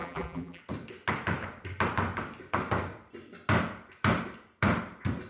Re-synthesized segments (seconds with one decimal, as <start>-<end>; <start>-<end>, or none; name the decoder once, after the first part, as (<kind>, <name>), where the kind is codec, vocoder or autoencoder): 0.0-0.6 (vocoder, BigVGAN v2)